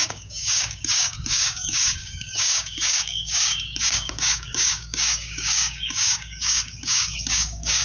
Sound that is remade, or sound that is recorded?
remade